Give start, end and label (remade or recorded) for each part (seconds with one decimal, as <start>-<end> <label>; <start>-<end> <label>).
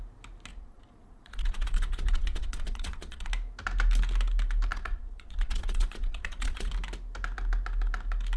0.0-0.5 recorded; 0.5-3.3 remade; 3.3-4.7 recorded; 4.7-6.7 remade; 6.7-8.4 recorded